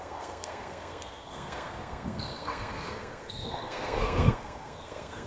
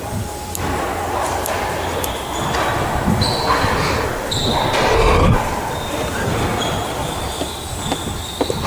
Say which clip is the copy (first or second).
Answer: first